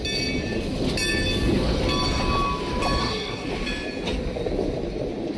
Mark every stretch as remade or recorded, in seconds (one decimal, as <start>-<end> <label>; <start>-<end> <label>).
0.0-3.0 recorded; 3.0-3.5 remade; 3.5-5.4 recorded